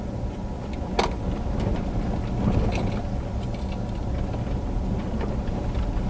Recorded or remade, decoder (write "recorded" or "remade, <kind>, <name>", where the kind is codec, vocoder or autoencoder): recorded